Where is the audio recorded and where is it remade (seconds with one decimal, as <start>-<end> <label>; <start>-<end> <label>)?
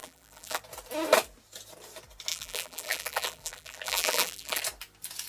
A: 0.0-0.6 remade; 0.6-2.3 recorded; 2.3-4.6 remade; 4.6-5.3 recorded